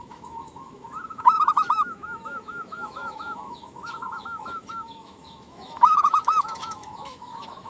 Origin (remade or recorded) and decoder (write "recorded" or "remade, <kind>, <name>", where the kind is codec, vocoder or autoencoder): remade, autoencoder, DAC-VAE